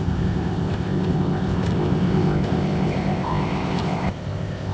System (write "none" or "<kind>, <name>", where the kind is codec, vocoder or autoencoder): codec, ZipCodec